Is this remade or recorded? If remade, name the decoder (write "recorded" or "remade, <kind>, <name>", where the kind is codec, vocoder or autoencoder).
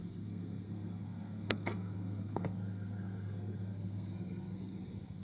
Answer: remade, codec, SNAC